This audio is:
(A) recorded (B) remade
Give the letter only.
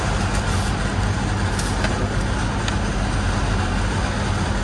A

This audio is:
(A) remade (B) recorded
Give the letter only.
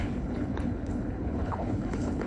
A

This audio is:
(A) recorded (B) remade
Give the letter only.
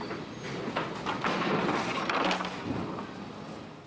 A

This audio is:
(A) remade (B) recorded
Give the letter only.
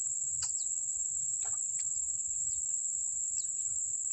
B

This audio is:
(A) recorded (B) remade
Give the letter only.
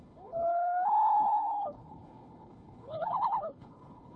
B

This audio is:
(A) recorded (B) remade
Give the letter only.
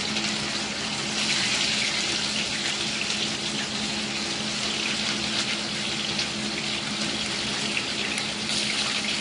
A